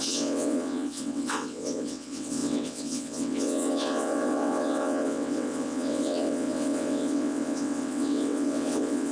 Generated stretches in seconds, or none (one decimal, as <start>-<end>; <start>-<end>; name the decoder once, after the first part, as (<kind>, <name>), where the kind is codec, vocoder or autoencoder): 0.0-9.1 (vocoder, WaveNeXt)